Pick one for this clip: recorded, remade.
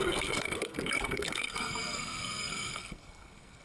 remade